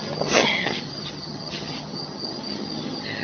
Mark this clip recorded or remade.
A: remade